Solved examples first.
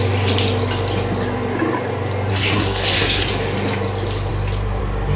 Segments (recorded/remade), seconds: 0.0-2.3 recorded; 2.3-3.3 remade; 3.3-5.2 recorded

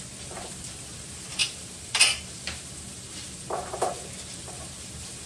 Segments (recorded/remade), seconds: 0.0-5.3 recorded

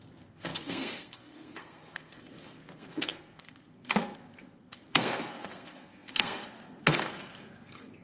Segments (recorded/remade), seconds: 0.0-8.0 remade

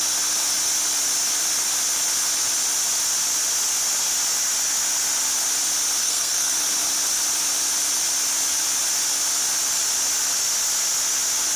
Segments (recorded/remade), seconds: 0.0-6.0 recorded; 6.0-6.5 remade; 6.5-11.6 recorded

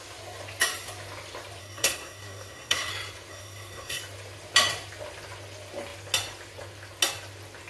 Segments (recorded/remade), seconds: 0.0-1.6 recorded; 1.6-2.9 remade; 2.9-3.3 recorded; 3.3-4.0 remade; 4.0-7.7 recorded

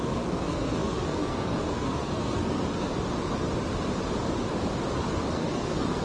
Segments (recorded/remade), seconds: 0.0-2.9 remade; 2.9-5.1 recorded; 5.1-6.0 remade

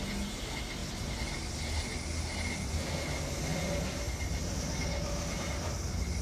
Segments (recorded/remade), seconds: 0.0-6.2 recorded